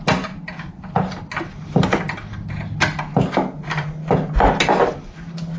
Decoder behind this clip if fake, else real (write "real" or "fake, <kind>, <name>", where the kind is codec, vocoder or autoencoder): real